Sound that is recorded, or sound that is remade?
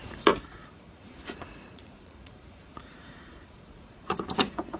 remade